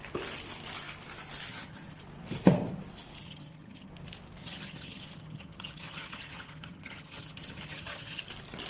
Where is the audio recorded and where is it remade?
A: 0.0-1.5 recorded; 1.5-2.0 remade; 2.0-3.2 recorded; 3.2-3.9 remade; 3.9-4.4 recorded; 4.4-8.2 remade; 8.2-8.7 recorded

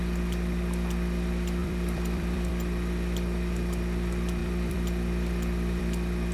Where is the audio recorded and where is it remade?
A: 0.0-1.6 recorded; 1.6-2.5 remade; 2.5-4.4 recorded; 4.4-5.8 remade; 5.8-6.3 recorded